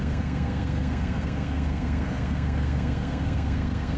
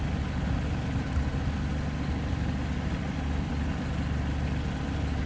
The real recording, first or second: second